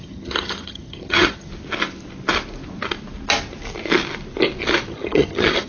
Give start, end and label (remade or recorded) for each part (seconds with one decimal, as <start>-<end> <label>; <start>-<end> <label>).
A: 0.0-1.5 remade; 1.5-4.9 recorded; 4.9-5.7 remade